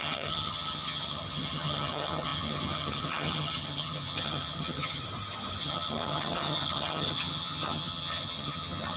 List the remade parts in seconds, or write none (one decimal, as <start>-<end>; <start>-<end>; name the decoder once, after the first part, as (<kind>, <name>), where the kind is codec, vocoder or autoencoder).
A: 0.0-5.0 (vocoder, HiFi-GAN); 5.6-9.0